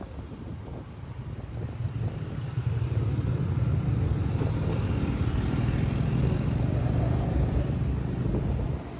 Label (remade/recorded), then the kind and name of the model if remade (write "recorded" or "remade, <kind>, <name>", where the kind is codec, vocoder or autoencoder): recorded